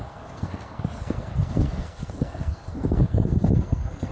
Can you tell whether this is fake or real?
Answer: fake